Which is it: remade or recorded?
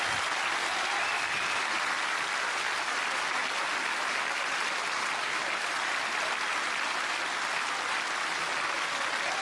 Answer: recorded